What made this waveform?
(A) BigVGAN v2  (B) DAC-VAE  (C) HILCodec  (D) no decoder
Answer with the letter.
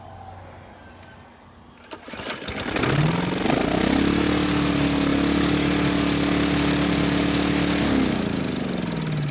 D